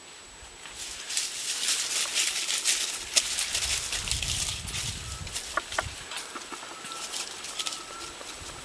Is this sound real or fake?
real